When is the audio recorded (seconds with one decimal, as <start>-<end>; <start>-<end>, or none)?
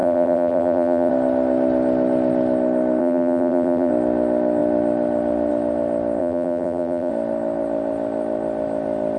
1.1-3.0; 3.9-6.2; 7.1-9.2